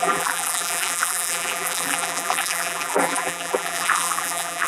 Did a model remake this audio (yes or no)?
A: yes